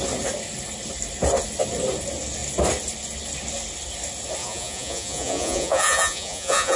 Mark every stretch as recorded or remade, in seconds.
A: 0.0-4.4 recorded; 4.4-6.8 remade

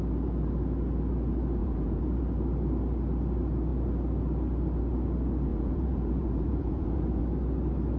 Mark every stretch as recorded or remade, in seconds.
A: 0.0-1.6 recorded; 1.6-2.2 remade; 2.2-5.5 recorded; 5.5-7.2 remade; 7.2-8.0 recorded